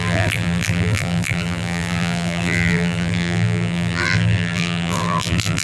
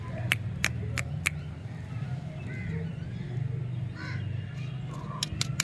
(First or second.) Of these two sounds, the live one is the second